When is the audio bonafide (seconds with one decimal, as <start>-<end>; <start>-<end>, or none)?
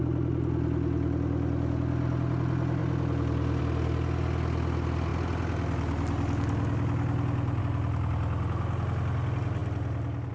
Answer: 0.0-10.3